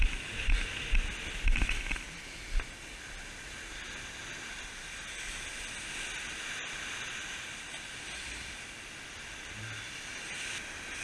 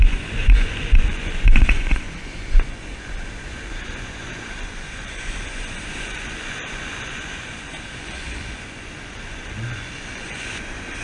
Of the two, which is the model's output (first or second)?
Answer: second